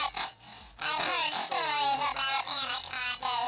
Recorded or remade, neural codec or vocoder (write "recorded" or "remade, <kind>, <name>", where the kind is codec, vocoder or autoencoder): recorded